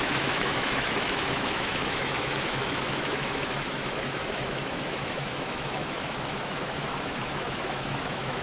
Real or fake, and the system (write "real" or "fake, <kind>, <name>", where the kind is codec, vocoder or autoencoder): fake, autoencoder, DAC-VAE